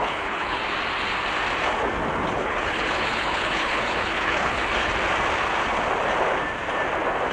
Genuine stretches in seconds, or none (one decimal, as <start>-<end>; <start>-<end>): 0.6-2.3; 4.9-7.3